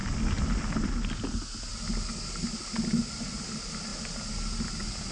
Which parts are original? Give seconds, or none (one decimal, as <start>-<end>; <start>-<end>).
0.0-5.1